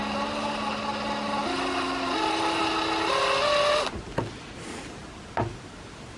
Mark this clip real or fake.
real